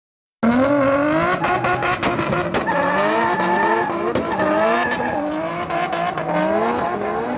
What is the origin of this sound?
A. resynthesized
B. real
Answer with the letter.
B